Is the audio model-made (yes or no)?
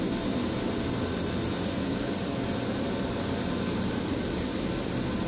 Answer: no